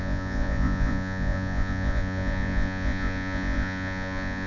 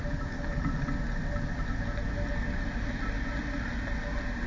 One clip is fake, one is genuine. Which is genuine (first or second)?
second